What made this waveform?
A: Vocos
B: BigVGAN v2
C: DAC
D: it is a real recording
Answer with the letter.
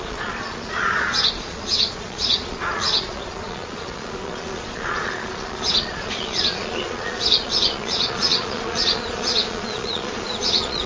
A